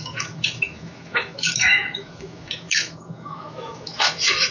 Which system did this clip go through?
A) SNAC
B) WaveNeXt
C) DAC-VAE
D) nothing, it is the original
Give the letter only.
C